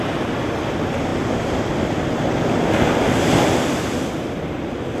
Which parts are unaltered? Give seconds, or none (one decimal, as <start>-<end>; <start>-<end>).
0.0-5.0